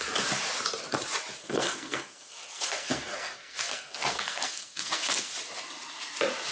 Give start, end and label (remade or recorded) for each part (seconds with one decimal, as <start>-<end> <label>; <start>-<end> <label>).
0.0-1.4 recorded; 1.4-5.3 remade; 5.3-6.5 recorded